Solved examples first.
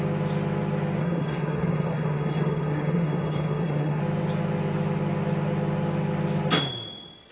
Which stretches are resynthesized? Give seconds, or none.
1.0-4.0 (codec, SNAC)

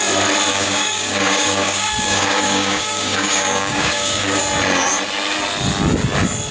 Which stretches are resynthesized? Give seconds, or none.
0.5-4.4 (codec, DAC)

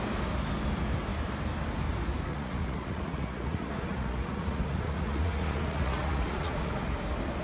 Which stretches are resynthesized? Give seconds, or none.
2.3-6.7 (vocoder, Vocos)

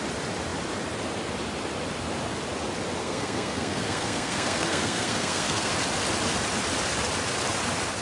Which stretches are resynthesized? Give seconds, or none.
3.0-5.7 (codec, SNAC)

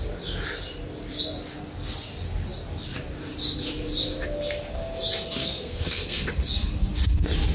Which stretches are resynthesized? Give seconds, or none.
5.4-6.2 (codec, SNAC)

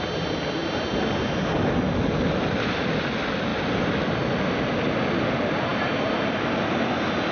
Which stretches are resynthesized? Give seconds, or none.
none

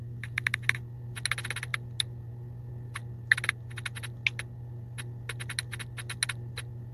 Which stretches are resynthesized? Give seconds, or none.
none